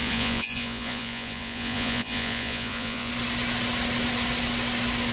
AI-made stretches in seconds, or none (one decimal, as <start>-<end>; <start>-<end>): 0.0-3.1